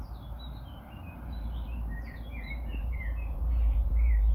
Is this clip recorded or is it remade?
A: remade